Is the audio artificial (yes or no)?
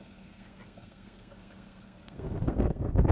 yes